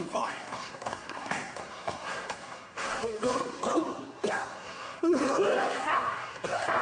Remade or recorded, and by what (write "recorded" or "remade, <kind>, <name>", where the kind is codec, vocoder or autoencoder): remade, codec, SNAC